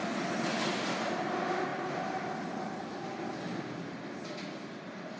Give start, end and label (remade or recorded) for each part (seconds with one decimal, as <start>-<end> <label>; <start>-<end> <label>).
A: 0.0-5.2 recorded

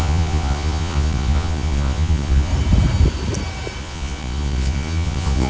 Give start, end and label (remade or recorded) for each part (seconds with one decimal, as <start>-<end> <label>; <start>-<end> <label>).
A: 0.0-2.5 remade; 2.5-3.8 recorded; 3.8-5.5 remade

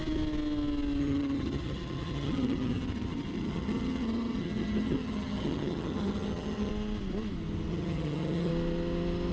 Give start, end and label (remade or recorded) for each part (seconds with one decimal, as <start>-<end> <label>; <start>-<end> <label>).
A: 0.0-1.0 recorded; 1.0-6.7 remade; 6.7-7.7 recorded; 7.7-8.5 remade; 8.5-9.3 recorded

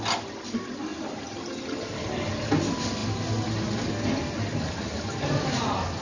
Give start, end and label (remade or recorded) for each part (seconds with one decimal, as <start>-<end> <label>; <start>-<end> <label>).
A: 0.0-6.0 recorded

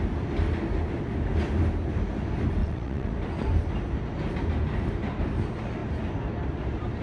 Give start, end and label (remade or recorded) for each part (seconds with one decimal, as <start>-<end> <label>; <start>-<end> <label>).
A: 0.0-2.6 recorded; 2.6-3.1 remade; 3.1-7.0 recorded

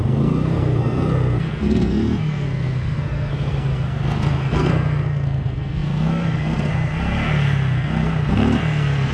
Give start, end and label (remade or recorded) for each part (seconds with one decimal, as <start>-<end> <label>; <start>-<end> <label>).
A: 0.0-9.1 remade